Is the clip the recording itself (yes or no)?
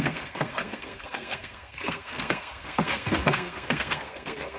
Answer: no